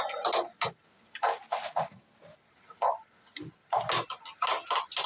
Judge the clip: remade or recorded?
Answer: recorded